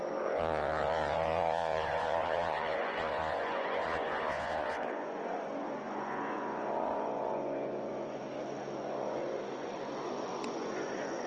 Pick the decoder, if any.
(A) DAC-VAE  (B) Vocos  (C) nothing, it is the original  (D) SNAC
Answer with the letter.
B